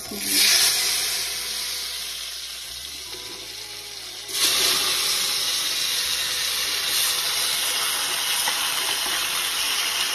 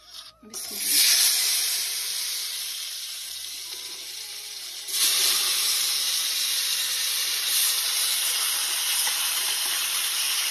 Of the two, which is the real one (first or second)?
first